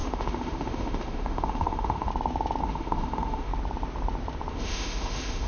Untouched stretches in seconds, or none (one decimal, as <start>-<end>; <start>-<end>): 2.1-2.6; 3.5-4.5